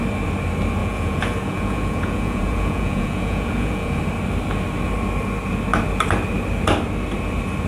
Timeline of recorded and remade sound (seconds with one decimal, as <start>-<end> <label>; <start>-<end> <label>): 0.0-0.8 recorded; 0.8-4.0 remade; 4.0-7.7 recorded